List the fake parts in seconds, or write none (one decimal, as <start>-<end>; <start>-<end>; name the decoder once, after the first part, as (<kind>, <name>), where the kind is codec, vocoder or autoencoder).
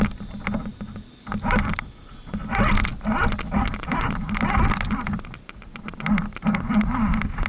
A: none